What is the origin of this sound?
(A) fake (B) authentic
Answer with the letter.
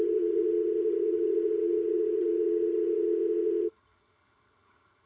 A